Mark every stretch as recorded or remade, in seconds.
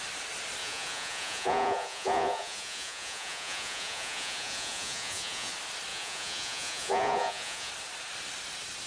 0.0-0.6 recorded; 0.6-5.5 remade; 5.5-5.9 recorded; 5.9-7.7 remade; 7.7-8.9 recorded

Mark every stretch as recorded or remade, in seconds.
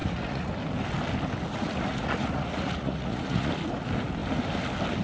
0.0-0.5 remade; 0.5-1.5 recorded; 1.5-3.5 remade; 3.5-5.0 recorded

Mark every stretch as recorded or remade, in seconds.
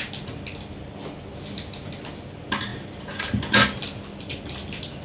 0.0-5.0 recorded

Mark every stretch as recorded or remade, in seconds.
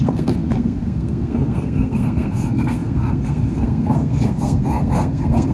0.0-5.5 remade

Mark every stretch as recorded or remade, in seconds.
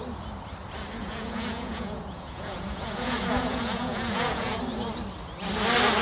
0.0-1.0 recorded; 1.0-4.6 remade; 4.6-6.0 recorded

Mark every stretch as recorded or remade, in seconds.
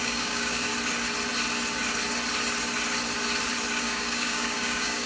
0.0-0.7 remade; 0.7-3.8 recorded; 3.8-5.1 remade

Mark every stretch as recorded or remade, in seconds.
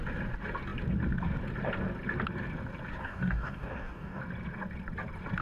0.0-3.0 recorded; 3.0-4.2 remade; 4.2-5.4 recorded